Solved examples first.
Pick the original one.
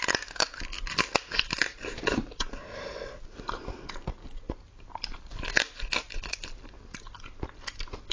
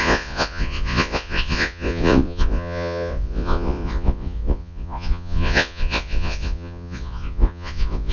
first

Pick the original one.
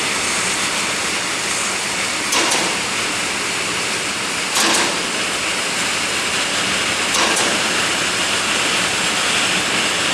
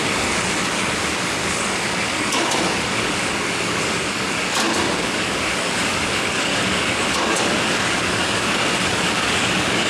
first